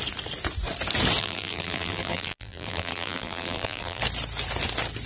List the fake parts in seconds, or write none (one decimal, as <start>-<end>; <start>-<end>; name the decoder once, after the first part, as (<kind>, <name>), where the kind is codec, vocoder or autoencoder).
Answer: 1.2-4.0 (vocoder, BigVGAN v2)